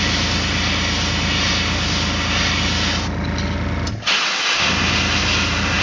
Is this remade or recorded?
recorded